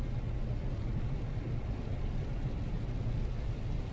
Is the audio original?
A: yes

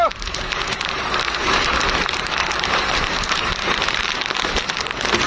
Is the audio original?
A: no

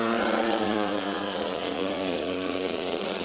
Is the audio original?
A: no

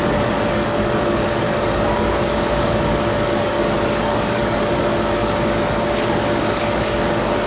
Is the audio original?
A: no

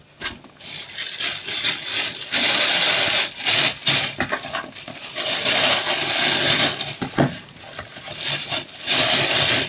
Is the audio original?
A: yes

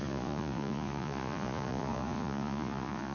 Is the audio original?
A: no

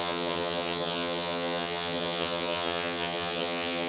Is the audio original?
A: no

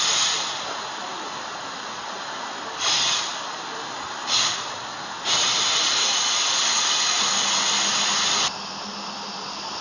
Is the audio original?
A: yes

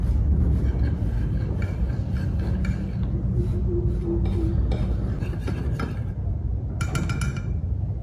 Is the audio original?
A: yes